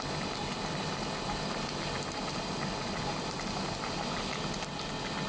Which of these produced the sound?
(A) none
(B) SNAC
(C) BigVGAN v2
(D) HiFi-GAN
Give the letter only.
A